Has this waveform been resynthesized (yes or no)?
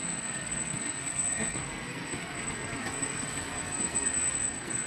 yes